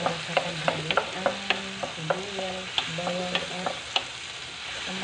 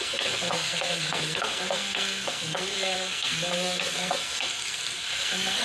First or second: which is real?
first